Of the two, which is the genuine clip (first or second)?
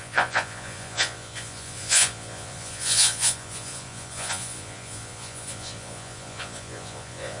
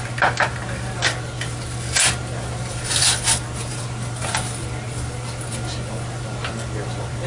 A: second